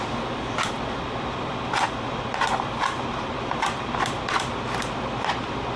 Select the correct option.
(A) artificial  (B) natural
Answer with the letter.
A